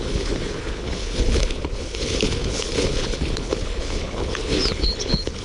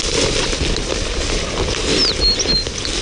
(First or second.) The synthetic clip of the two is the first